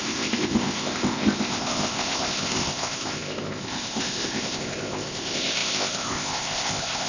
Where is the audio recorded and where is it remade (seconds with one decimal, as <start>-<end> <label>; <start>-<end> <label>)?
0.0-7.1 remade